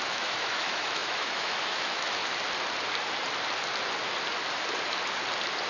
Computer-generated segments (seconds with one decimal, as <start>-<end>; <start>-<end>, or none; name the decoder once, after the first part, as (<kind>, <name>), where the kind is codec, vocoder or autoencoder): 0.0-2.2 (autoencoder, DAC-VAE)